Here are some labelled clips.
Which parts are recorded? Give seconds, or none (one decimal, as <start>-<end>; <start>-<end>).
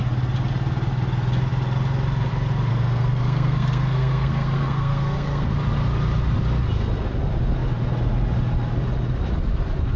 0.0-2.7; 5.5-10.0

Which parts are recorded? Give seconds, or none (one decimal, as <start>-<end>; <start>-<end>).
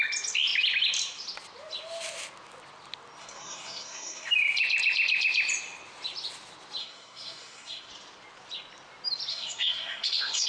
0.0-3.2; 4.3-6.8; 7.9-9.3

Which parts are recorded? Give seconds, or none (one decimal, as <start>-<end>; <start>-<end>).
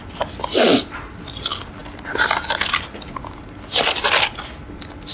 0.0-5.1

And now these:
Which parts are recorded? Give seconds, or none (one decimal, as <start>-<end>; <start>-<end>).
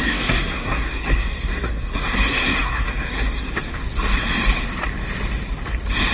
3.5-6.1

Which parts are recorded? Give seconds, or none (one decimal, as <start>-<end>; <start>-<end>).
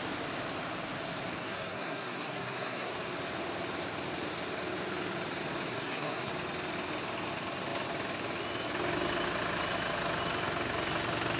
0.0-1.4; 2.9-5.7; 6.3-11.4